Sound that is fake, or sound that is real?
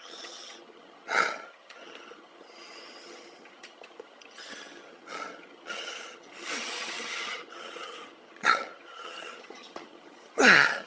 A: fake